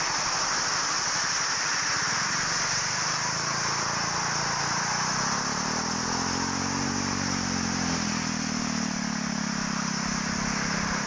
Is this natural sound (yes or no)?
yes